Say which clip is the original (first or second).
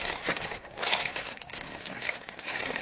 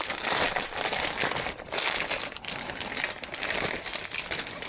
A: second